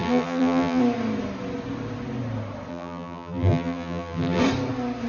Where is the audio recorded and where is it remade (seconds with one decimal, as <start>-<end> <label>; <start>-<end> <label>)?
0.0-0.8 remade; 0.8-2.7 recorded; 2.7-4.4 remade; 4.4-5.1 recorded